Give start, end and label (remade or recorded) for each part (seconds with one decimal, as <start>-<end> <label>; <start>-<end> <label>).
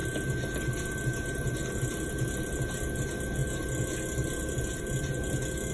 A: 0.0-5.7 recorded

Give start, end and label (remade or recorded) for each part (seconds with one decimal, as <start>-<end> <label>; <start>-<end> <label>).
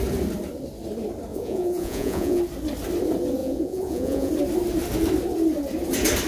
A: 0.0-1.3 recorded; 1.3-2.4 remade; 2.4-3.4 recorded; 3.4-4.3 remade; 4.3-6.3 recorded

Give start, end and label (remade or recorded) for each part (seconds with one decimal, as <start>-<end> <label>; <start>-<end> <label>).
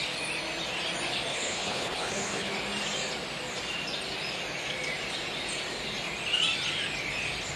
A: 0.0-1.3 recorded; 1.3-2.5 remade; 2.5-7.6 recorded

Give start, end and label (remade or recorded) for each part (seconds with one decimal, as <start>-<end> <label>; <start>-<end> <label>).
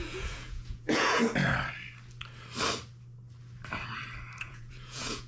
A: 0.0-1.2 remade; 1.2-4.4 recorded; 4.4-5.3 remade